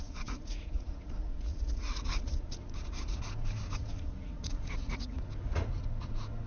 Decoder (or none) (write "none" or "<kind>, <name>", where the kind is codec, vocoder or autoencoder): vocoder, Vocos